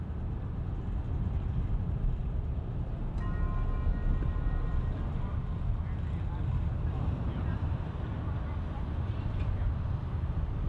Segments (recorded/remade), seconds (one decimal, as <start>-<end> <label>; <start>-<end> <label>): 0.0-10.7 recorded